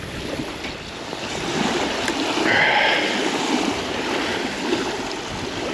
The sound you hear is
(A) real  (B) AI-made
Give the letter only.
A